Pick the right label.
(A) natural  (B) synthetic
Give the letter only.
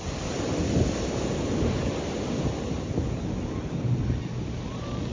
A